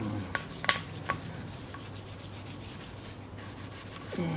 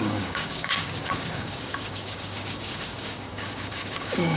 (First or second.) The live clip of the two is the first